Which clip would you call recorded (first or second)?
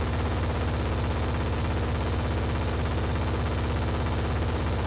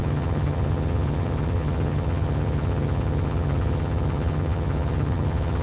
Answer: first